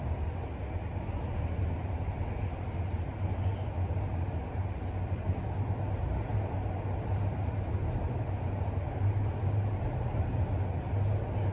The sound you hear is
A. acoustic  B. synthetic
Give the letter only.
A